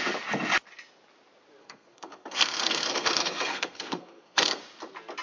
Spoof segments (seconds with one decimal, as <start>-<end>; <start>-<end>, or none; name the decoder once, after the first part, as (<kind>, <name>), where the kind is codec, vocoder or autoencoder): 1.6-4.6 (codec, SNAC)